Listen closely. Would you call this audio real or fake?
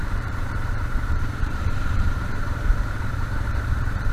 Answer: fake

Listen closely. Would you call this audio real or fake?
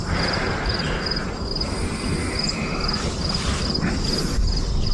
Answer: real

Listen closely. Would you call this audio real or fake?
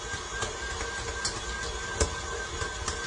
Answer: real